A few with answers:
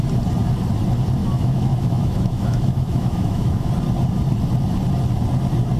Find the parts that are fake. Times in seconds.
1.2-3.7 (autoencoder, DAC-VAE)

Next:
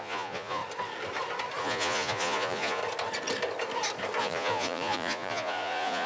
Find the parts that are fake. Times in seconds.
0.0-0.6 (vocoder, Vocos); 1.6-2.8; 4.2-6.1

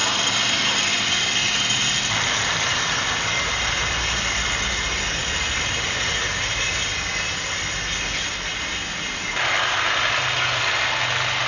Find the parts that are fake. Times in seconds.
0.0-4.5 (vocoder, BigVGAN v2); 5.2-8.9

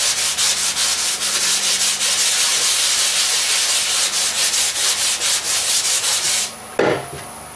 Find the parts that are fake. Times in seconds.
none

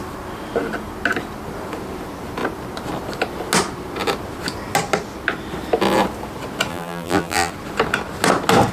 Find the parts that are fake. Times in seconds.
6.7-7.5 (vocoder, BigVGAN v2)

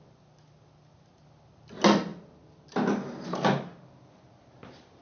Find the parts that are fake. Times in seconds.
none

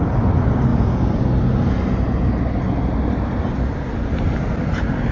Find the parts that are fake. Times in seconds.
0.7-1.2 (vocoder, Vocos)